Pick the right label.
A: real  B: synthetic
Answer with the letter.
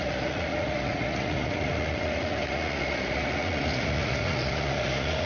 B